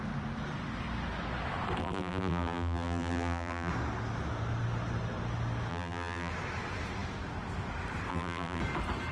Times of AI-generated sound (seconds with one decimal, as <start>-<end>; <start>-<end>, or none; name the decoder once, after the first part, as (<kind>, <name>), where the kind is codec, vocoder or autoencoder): 1.8-3.7 (vocoder, BigVGAN v2); 5.7-6.3; 8.1-8.6